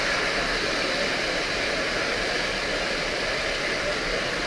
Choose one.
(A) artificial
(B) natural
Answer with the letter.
B